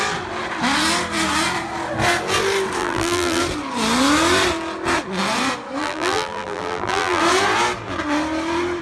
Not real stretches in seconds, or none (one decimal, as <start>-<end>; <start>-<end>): 2.8-3.4; 5.8-7.2